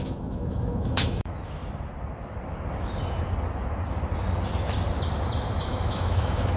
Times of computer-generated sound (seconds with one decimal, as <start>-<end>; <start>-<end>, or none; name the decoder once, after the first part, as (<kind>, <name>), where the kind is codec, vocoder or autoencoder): 0.0-1.6 (autoencoder, DAC-VAE); 5.6-6.6